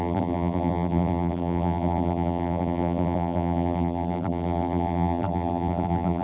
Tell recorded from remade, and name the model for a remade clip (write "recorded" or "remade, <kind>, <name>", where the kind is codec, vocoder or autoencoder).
remade, vocoder, BigVGAN v2